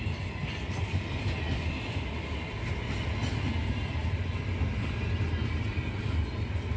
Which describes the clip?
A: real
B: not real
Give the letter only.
A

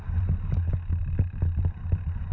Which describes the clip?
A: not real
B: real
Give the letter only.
B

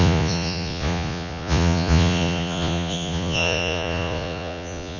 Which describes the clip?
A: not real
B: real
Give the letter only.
A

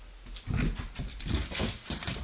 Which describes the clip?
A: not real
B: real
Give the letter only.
B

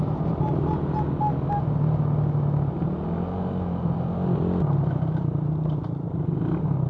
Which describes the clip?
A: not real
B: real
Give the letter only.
B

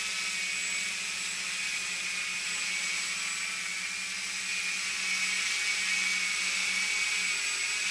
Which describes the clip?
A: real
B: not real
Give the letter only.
A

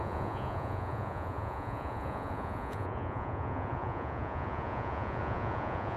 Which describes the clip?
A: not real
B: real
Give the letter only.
A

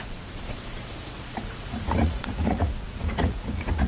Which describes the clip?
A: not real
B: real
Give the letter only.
A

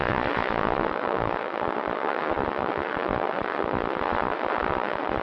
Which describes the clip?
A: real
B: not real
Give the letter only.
B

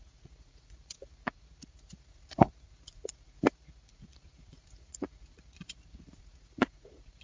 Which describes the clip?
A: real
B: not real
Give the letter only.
B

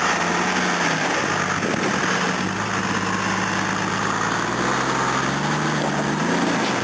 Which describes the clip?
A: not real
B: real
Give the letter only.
B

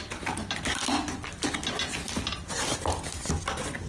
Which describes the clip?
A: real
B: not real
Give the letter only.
A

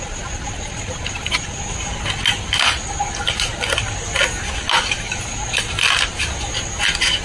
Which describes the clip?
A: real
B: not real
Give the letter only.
A